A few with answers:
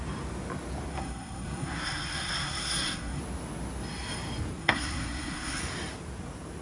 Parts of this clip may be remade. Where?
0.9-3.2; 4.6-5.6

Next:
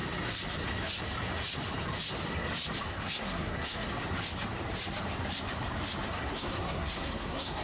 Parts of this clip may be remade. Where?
2.9-3.9; 6.1-7.6

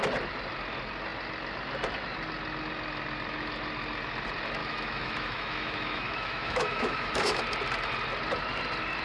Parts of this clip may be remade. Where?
4.6-7.4

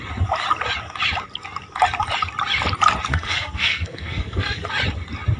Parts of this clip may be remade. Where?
3.1-4.7

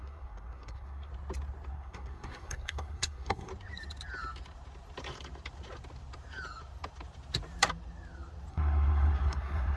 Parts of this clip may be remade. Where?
0.0-1.1; 1.7-3.5; 8.5-9.8

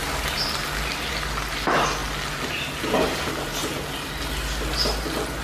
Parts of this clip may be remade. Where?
none

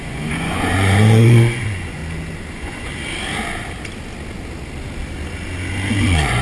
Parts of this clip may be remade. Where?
0.0-2.0; 2.5-2.9; 5.9-6.4

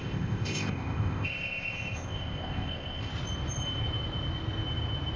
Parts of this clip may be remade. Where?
0.0-3.1